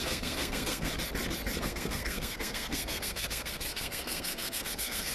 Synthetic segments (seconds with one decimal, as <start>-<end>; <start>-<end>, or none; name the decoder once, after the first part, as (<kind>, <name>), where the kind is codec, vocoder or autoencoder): 0.0-0.9 (codec, SNAC); 1.6-5.1